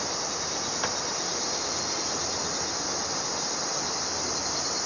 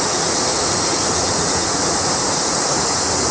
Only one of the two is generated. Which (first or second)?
second